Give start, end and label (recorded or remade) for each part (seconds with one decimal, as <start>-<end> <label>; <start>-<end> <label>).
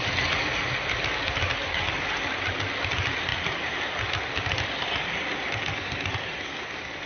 0.0-3.3 recorded; 3.3-3.9 remade; 3.9-5.7 recorded; 5.7-6.5 remade; 6.5-7.1 recorded